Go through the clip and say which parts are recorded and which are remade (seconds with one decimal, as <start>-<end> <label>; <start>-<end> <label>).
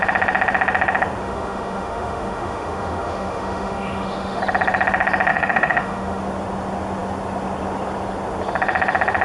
0.0-1.2 recorded; 1.2-4.4 remade; 4.4-5.3 recorded; 5.3-6.2 remade; 6.2-9.2 recorded